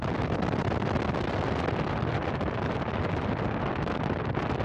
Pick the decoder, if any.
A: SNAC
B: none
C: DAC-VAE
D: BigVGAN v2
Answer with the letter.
B